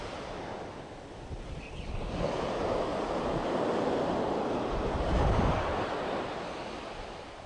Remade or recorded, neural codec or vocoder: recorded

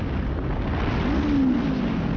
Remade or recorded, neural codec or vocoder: recorded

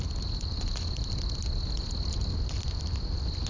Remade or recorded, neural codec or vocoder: recorded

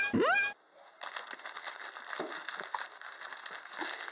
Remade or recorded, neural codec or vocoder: recorded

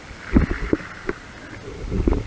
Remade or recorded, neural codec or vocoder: recorded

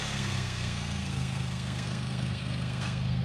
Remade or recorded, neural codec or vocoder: remade, codec, SNAC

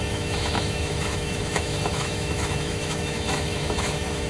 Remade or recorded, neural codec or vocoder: remade, autoencoder, DAC-VAE